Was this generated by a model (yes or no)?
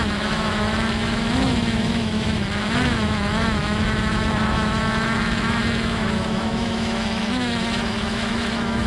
yes